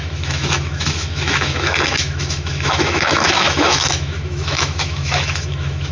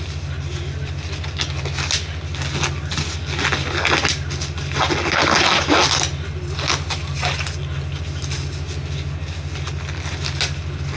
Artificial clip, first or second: first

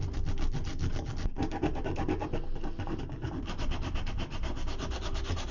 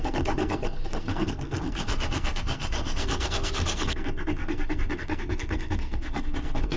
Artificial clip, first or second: second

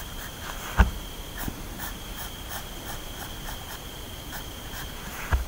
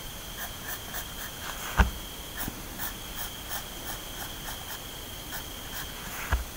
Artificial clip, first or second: first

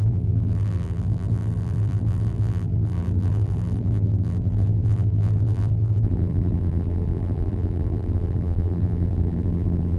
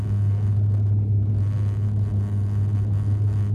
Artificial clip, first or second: first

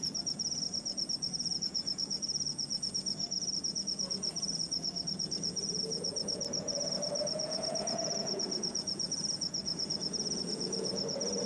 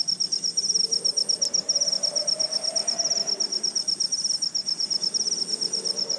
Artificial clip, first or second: first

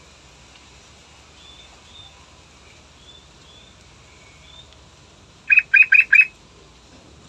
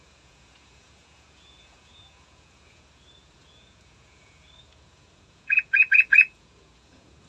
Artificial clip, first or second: second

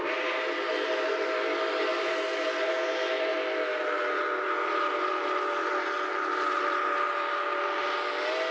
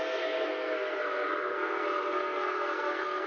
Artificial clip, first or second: second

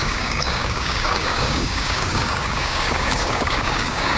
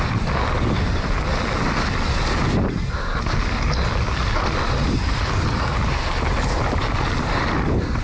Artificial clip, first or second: first